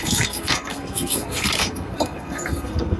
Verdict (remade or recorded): remade